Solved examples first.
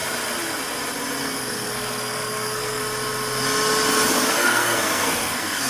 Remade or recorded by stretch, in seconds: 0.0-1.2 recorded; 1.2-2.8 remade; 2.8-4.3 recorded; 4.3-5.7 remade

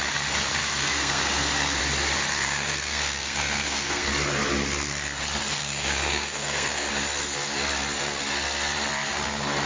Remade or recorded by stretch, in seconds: 0.0-0.6 recorded; 0.6-1.8 remade; 1.8-2.3 recorded; 2.3-4.1 remade; 4.1-5.6 recorded; 5.6-6.9 remade; 6.9-9.7 recorded

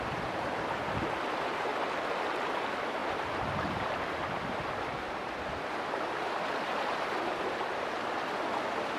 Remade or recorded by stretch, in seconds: 0.0-9.0 recorded

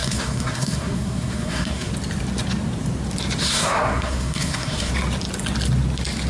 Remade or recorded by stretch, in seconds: 0.0-1.9 remade; 1.9-3.4 recorded; 3.4-4.9 remade; 4.9-6.3 recorded